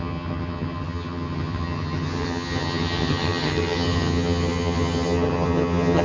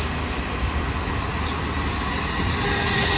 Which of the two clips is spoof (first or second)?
first